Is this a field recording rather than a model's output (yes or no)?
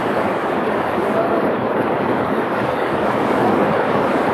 no